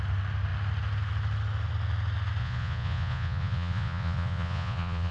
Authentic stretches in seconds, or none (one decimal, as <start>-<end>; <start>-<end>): 0.0-2.4